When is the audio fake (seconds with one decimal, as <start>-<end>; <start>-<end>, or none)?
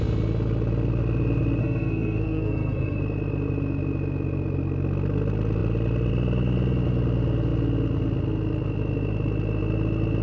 1.6-3.0